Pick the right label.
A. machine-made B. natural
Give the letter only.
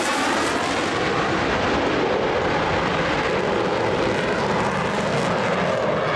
B